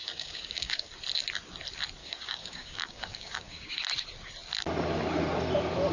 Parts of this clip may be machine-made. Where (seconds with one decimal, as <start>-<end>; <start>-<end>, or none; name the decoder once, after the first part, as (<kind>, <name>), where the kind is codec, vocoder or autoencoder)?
0.0-0.9 (codec, DAC); 2.0-3.7